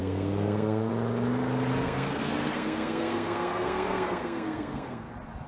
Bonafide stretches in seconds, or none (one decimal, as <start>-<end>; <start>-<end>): 0.9-1.8; 5.1-5.5